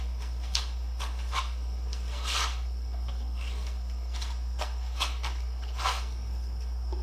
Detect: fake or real fake